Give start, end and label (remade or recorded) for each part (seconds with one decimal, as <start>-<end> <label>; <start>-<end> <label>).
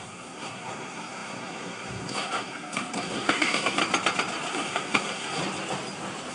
0.0-3.8 remade; 3.8-4.5 recorded; 4.5-5.4 remade; 5.4-6.3 recorded